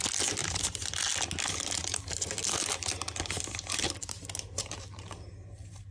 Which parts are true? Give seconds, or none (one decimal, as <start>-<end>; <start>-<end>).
0.0-5.9